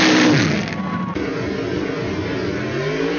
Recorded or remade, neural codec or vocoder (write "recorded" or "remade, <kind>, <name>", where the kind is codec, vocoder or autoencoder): recorded